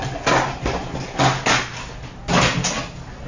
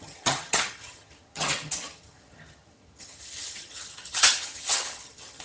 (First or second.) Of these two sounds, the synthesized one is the second